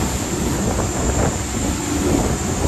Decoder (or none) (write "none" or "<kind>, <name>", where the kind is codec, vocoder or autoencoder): none